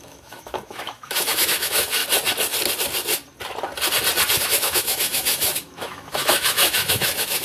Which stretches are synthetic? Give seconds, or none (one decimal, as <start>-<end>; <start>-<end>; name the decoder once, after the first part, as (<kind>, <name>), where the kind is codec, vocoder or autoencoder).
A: 0.0-2.0 (autoencoder, DAC-VAE); 4.4-7.4